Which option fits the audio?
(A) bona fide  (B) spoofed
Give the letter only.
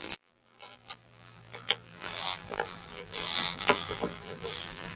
B